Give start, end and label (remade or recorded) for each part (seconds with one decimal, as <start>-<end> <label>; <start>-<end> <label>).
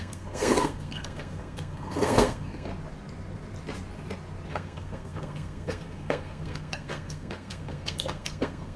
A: 0.0-2.7 remade; 2.7-4.5 recorded; 4.5-8.8 remade